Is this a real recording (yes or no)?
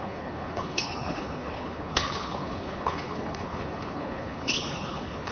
no